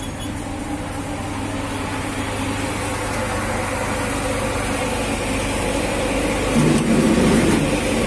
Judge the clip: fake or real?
real